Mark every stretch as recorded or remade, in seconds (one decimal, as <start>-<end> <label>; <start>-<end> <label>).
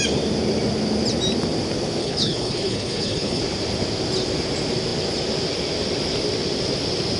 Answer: 0.0-2.0 recorded; 2.0-3.4 remade; 3.4-7.2 recorded